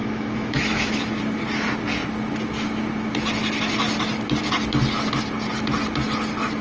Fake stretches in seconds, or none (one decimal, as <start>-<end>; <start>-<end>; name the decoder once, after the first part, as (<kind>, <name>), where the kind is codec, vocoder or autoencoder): 0.0-1.2 (autoencoder, DAC-VAE)